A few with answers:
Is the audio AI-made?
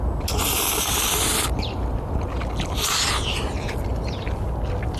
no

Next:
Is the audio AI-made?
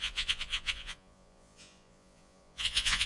yes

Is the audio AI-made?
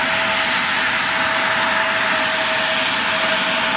no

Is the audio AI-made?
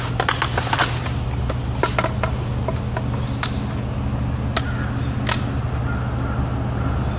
no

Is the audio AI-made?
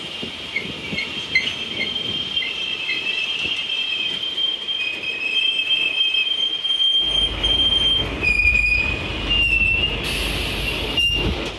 no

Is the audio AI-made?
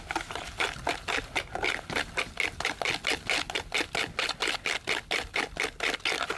no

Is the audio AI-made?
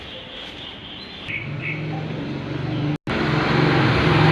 no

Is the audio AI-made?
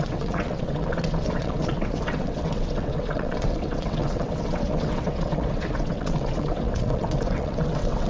yes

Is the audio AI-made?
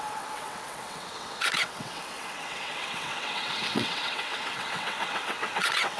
yes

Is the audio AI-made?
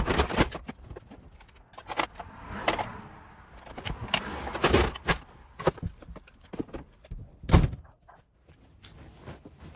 no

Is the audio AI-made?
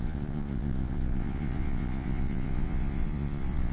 yes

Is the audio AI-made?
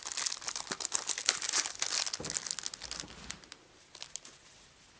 no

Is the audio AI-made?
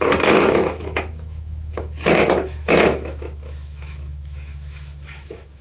yes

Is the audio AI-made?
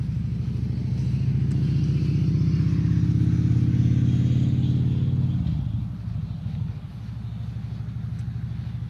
no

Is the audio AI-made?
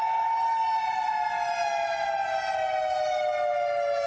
no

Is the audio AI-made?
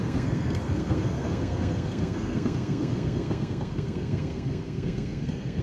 yes